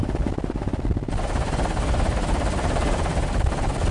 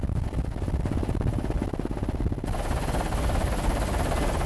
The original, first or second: second